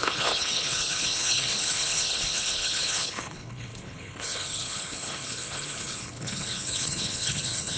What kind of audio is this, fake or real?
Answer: fake